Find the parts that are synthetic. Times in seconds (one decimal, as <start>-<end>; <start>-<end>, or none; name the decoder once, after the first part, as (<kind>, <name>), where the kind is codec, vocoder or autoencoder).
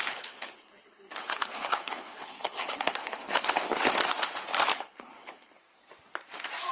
0.0-3.6 (codec, HILCodec); 4.7-5.6